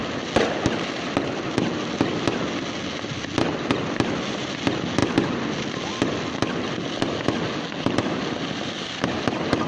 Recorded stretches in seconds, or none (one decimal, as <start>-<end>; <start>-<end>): 0.0-9.7

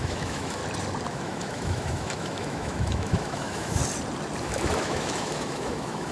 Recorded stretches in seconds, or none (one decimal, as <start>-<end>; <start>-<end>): 0.6-1.1; 3.8-4.4

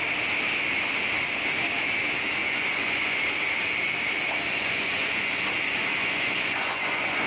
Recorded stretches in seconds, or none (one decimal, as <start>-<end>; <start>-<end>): 0.0-2.4; 3.2-4.5; 5.4-6.0

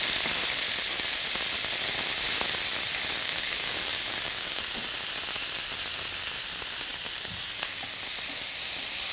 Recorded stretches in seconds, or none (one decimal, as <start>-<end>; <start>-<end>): 0.0-3.2; 4.6-9.1

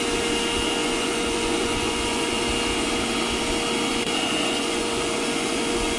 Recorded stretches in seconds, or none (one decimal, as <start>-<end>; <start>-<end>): 0.0-0.8; 2.4-3.9

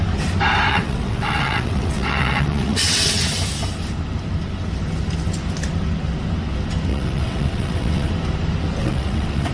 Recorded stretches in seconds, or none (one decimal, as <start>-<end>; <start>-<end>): 0.0-0.7; 3.3-6.9; 8.1-8.8